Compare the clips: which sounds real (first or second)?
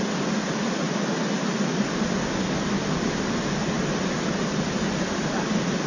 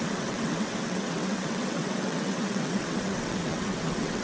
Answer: first